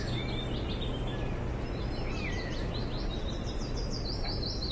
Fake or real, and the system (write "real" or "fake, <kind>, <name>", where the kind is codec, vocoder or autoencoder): real